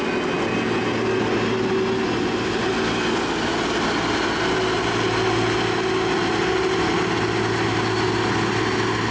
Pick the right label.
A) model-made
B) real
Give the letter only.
B